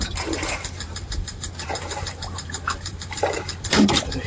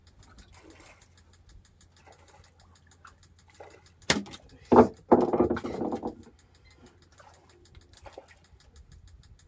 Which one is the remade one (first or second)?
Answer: first